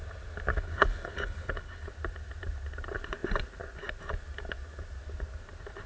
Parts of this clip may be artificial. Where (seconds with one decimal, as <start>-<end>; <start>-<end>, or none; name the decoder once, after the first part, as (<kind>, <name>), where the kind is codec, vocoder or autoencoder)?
0.5-1.9 (codec, HILCodec)